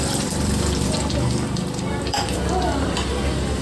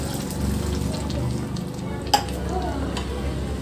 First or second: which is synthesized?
first